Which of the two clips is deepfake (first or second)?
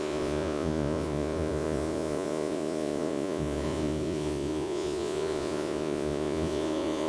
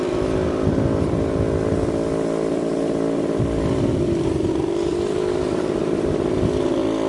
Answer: first